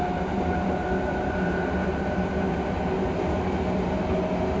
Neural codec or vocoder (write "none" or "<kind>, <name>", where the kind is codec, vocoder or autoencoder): none